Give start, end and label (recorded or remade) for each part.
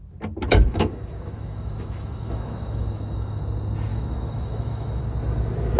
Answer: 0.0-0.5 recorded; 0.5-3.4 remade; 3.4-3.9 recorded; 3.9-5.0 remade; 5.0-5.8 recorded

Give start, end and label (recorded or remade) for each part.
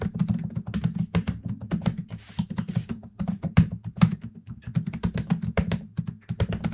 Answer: 0.0-2.0 recorded; 2.0-6.0 remade; 6.0-6.7 recorded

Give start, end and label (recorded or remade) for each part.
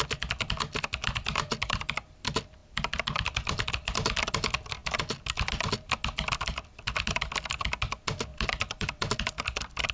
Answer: 0.0-2.6 recorded; 2.6-3.7 remade; 3.7-8.3 recorded; 8.3-9.9 remade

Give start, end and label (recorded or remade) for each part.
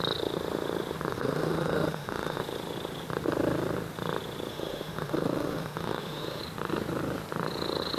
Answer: 0.0-1.1 recorded; 1.1-2.4 remade; 2.4-4.5 recorded; 4.5-6.4 remade; 6.4-8.0 recorded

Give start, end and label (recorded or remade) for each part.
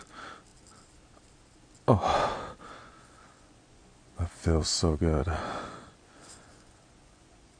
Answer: 0.0-2.8 recorded; 2.8-7.6 remade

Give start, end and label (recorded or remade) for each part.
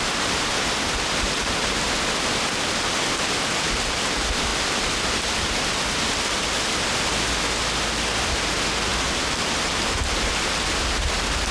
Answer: 0.0-11.5 recorded